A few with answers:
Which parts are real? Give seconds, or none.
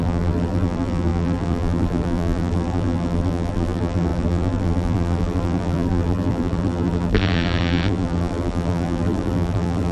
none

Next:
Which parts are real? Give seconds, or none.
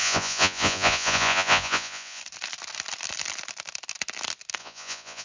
2.2-4.6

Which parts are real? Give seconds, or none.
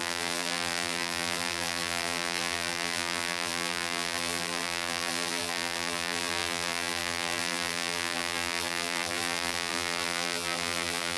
none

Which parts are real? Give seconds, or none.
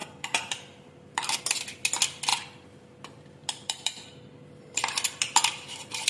1.4-2.3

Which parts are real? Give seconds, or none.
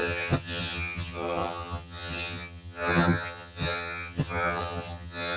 none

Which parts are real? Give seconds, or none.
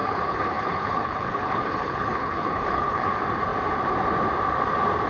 3.1-5.1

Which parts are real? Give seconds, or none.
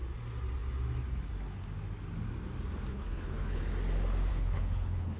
0.0-2.9; 3.6-4.3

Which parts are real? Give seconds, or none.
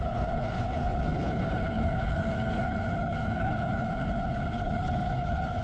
none